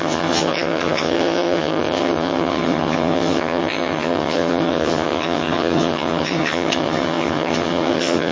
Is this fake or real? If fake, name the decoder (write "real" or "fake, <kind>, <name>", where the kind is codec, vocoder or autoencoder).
fake, vocoder, HiFi-GAN